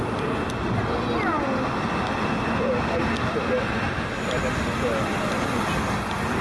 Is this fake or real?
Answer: real